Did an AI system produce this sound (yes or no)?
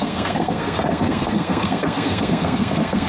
yes